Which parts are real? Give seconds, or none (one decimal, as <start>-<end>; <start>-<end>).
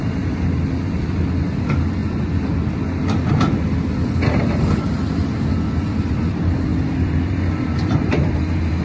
2.0-3.3